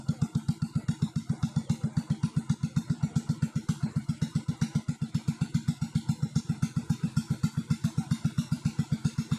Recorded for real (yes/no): no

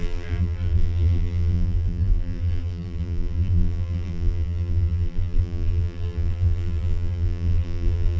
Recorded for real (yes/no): no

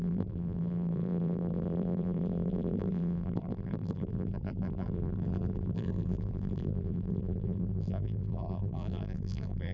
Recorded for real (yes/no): no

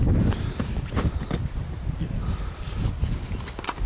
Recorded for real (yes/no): yes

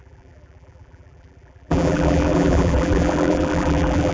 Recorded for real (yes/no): no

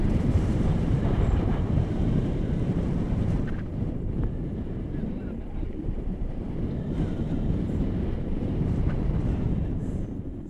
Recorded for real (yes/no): no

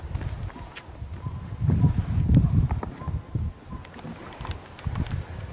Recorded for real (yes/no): yes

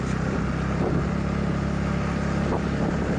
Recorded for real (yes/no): yes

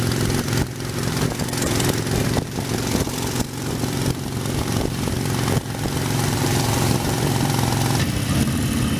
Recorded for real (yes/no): no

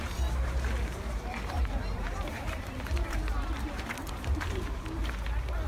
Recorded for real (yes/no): no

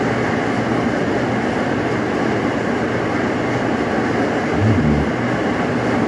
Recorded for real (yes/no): yes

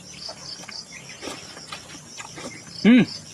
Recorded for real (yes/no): yes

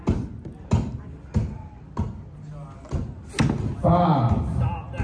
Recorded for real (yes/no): yes